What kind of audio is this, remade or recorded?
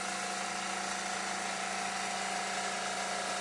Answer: recorded